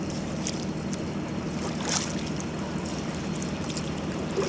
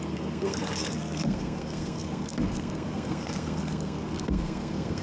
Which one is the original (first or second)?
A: first